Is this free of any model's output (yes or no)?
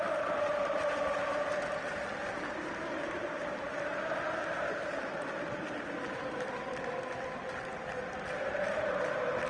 yes